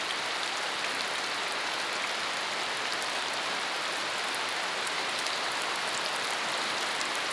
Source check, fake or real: fake